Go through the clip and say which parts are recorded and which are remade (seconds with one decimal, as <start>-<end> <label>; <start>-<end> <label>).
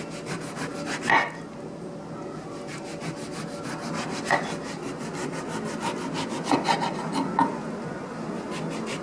0.0-9.0 recorded